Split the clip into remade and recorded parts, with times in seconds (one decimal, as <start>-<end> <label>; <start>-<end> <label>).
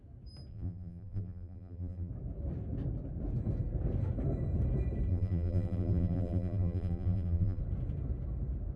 0.0-0.5 recorded; 0.5-2.1 remade; 2.1-5.1 recorded; 5.1-7.6 remade; 7.6-8.8 recorded